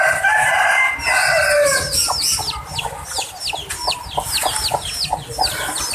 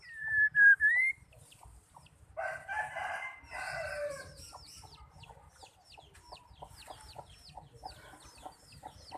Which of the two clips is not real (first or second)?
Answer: second